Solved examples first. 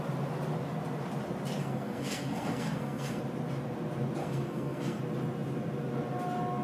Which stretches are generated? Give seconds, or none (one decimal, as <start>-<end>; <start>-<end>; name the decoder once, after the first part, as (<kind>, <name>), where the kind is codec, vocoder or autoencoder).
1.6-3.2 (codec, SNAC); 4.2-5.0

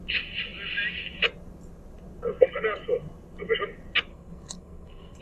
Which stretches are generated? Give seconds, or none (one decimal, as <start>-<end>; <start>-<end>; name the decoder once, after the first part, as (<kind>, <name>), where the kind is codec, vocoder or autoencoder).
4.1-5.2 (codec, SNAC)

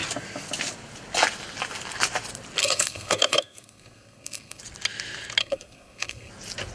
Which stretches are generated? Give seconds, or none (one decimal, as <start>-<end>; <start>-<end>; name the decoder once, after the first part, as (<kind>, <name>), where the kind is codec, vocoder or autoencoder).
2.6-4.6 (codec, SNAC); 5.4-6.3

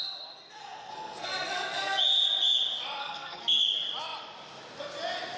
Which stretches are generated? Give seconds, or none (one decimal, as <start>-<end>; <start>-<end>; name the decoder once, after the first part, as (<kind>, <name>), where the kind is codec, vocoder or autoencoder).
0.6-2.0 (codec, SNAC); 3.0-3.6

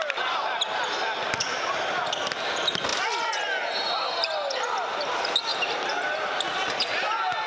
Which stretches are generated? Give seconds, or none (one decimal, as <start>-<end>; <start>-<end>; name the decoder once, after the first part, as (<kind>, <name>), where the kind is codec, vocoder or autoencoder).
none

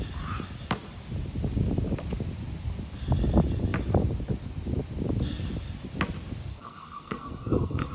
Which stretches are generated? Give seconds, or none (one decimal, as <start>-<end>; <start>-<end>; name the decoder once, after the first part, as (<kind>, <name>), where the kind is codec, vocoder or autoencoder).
6.5-7.9 (codec, SNAC)